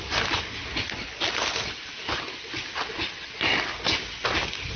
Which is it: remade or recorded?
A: recorded